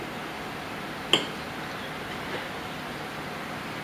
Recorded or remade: recorded